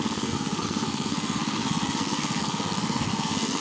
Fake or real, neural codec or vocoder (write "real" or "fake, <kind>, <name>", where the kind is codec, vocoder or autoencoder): fake, codec, SNAC